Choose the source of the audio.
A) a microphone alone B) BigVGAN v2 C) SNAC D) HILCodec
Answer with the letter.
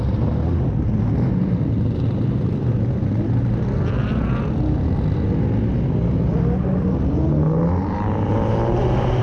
A